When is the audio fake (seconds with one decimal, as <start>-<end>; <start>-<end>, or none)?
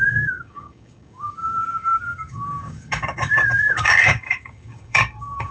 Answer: 0.0-5.5